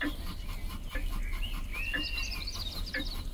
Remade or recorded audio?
recorded